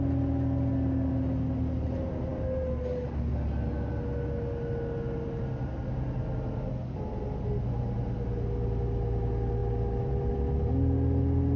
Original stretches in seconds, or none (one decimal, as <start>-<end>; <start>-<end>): 0.0-11.6